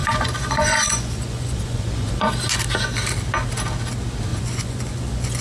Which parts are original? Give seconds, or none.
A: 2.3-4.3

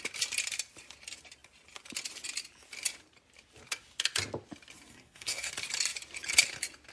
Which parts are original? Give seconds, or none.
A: 0.0-4.9; 5.5-6.9

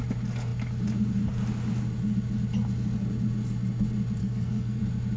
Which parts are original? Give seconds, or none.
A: 0.0-4.2; 4.8-5.2

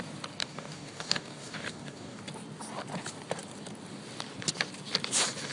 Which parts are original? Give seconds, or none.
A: 0.0-0.4; 2.2-5.5

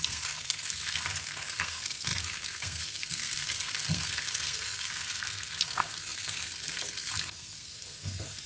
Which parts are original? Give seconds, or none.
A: none

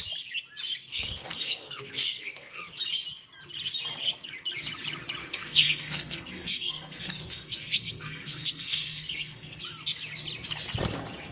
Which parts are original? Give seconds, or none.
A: 0.0-0.9; 2.7-5.2; 9.6-11.3

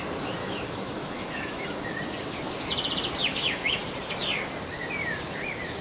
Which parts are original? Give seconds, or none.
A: 0.0-0.4; 1.9-3.2; 3.8-5.8